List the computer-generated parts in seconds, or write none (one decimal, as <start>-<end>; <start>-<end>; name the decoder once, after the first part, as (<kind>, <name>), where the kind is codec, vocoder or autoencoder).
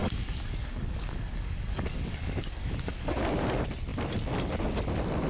0.0-3.2 (codec, DAC)